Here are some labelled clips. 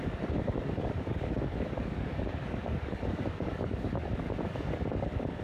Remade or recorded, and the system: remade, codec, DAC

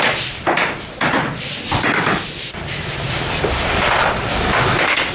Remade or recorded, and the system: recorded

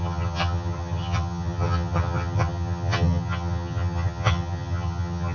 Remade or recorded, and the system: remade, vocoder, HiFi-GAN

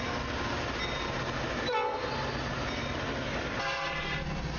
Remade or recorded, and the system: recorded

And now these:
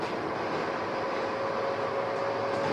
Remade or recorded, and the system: recorded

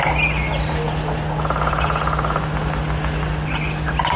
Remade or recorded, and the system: recorded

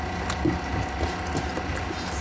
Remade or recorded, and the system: recorded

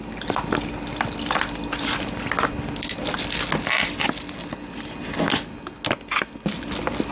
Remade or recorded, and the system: recorded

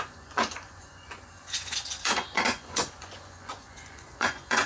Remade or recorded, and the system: remade, vocoder, Vocos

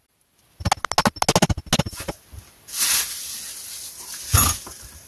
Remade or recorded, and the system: recorded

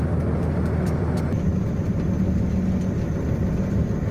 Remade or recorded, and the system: recorded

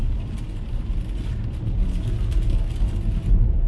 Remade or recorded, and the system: recorded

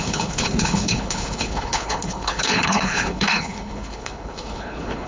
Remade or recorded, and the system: remade, codec, HILCodec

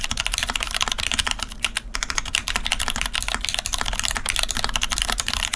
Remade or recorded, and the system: recorded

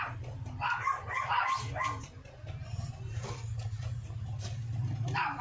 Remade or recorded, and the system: recorded